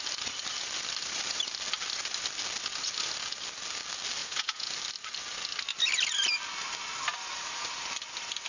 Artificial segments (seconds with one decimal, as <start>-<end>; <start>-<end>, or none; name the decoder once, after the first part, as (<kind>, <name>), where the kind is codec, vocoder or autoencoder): 4.2-4.7 (vocoder, Vocos)